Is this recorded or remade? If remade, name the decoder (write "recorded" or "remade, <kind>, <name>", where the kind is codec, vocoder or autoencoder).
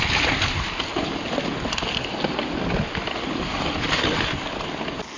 recorded